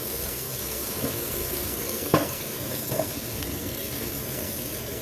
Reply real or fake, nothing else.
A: fake